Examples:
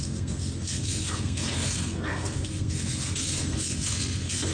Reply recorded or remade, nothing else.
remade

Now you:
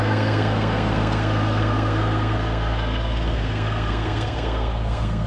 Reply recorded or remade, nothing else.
remade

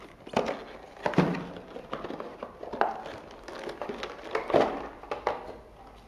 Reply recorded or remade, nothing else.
recorded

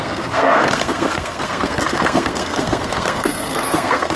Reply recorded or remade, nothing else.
remade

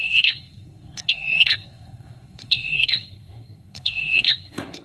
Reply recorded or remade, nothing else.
remade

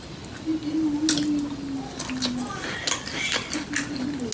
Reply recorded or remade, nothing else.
recorded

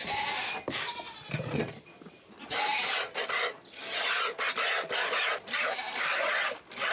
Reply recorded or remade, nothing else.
recorded